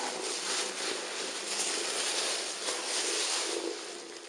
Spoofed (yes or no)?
no